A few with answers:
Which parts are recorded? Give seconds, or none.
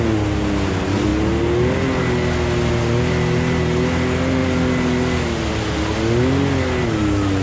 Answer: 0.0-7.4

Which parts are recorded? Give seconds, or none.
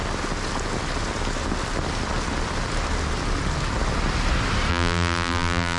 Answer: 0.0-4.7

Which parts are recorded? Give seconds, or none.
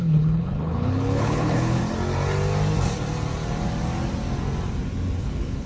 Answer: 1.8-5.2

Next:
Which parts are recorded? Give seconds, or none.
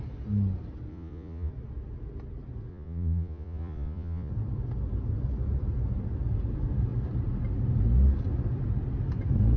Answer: 0.0-0.9; 1.5-2.7; 4.3-9.6